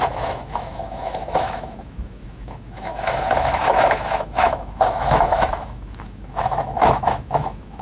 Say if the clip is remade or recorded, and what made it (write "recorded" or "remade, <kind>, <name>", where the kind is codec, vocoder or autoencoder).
remade, autoencoder, DAC-VAE